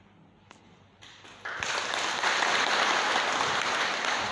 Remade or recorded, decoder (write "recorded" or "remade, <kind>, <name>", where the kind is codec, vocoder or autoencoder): recorded